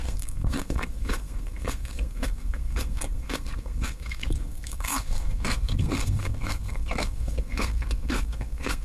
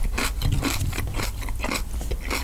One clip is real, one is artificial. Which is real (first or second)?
second